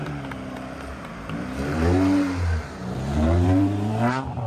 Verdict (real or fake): fake